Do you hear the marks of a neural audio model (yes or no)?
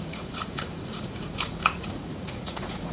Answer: yes